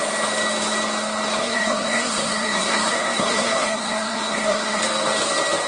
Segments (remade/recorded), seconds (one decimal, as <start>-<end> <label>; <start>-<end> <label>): 0.0-1.4 recorded; 1.4-4.8 remade; 4.8-5.7 recorded